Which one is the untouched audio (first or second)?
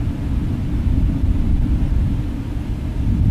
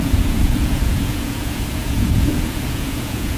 first